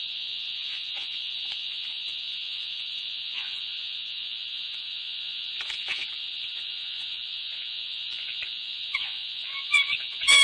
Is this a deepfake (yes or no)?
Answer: yes